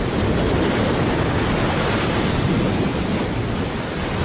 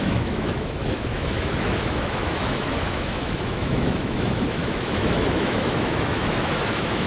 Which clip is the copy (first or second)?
second